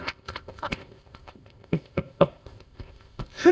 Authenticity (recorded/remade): remade